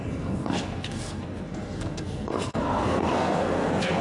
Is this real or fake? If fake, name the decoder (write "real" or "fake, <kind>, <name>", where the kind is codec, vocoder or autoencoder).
fake, codec, SNAC